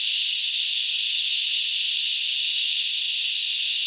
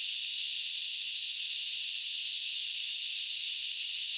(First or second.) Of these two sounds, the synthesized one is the second